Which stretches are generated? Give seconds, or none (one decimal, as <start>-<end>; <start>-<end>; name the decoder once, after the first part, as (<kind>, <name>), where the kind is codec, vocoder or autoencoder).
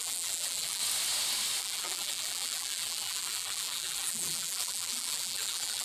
0.0-0.8 (vocoder, BigVGAN v2); 1.6-5.8